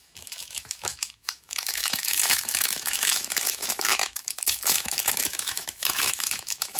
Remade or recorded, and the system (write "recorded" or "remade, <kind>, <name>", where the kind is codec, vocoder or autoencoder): remade, autoencoder, DAC-VAE